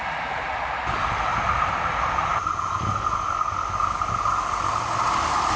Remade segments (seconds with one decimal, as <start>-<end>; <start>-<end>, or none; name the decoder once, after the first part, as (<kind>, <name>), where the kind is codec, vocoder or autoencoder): none